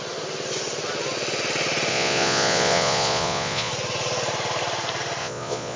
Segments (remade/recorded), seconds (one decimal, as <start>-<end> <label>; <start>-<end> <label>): 0.0-1.9 recorded; 1.9-3.7 remade; 3.7-5.2 recorded; 5.2-5.8 remade